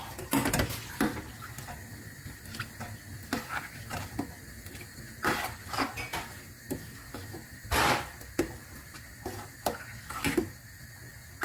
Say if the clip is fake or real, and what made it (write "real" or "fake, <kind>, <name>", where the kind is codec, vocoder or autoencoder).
real